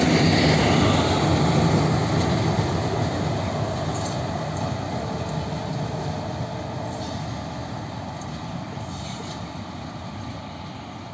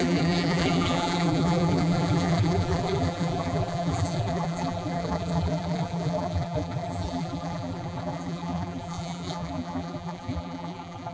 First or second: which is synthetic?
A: second